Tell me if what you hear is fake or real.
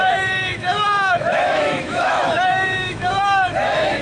fake